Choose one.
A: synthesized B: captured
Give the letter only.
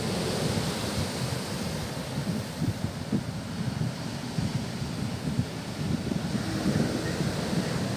B